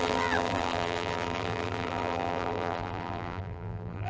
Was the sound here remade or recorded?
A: remade